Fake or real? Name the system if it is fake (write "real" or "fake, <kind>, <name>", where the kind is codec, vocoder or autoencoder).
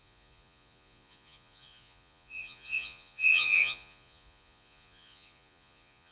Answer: fake, vocoder, Vocos